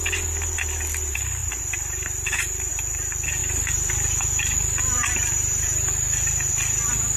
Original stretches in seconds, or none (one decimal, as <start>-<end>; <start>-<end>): 0.0-1.4; 2.7-3.4; 6.5-7.2